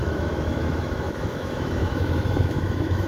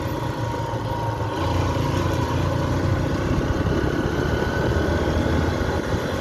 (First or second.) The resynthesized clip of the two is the first